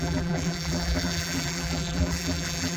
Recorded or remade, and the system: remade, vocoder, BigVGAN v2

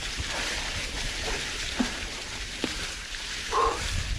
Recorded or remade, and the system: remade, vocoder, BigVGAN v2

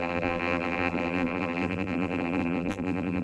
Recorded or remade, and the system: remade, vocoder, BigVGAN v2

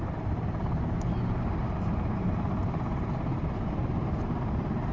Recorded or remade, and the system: remade, vocoder, BigVGAN v2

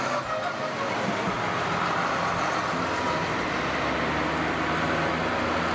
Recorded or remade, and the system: recorded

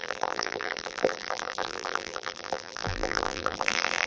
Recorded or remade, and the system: remade, vocoder, BigVGAN v2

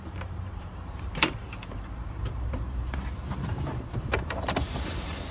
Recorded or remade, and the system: remade, vocoder, BigVGAN v2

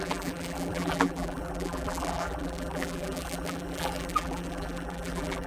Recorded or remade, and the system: remade, vocoder, BigVGAN v2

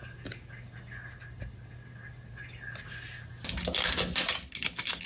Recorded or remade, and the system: recorded